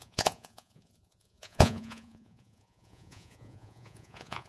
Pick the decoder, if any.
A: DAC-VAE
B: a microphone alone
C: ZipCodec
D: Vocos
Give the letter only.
D